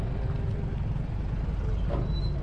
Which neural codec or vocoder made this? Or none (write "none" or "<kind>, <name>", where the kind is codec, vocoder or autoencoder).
none